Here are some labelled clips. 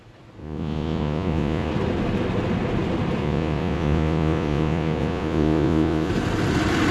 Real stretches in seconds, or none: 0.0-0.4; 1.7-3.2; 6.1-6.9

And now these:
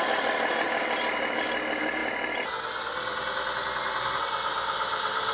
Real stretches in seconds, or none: 0.0-5.3

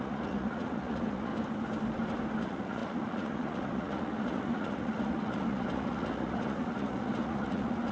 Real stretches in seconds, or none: 1.3-2.4

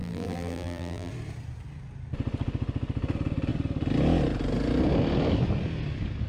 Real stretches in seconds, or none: 1.1-6.3

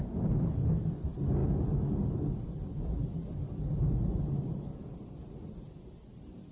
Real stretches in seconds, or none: 0.0-6.5